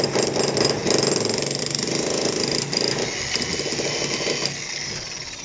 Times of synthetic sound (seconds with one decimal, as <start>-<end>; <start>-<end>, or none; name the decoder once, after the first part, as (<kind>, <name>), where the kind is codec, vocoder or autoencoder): none